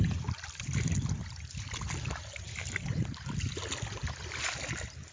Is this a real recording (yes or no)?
yes